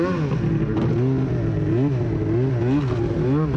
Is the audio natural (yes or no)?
yes